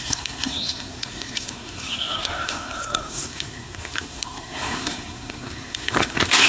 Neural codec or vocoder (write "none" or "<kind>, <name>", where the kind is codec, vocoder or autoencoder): codec, SNAC